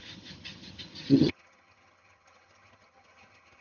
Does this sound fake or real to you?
fake